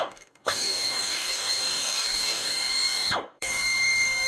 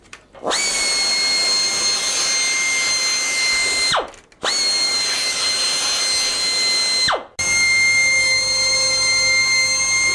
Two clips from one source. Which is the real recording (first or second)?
second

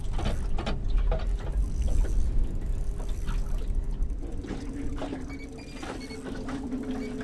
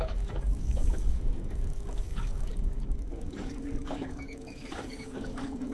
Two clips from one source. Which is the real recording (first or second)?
first